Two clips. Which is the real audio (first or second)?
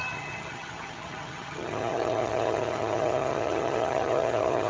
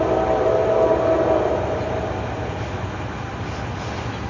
second